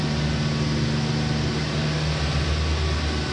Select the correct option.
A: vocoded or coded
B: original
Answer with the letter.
B